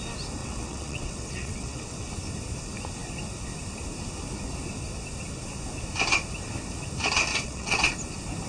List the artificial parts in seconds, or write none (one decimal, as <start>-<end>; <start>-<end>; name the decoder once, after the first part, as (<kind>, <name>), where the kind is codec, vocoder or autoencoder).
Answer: 0.4-2.1 (vocoder, WaveNeXt); 7.3-7.9